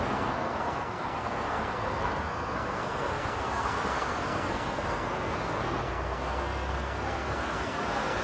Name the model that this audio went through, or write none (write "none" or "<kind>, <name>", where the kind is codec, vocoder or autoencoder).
codec, SNAC